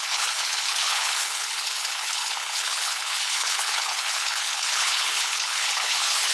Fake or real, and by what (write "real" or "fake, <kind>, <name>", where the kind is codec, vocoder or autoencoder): fake, codec, HILCodec